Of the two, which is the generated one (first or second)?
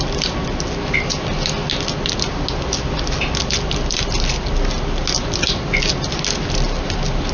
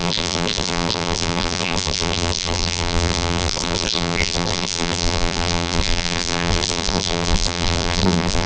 second